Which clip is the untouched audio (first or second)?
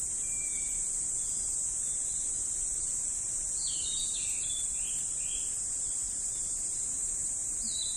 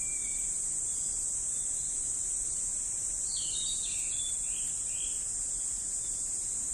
second